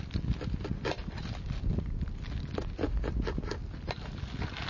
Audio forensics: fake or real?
real